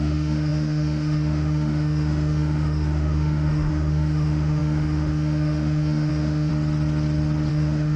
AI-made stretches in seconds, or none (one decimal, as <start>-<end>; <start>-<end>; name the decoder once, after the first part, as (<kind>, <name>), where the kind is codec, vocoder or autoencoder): 0.0-6.5 (autoencoder, DAC-VAE); 7.5-8.0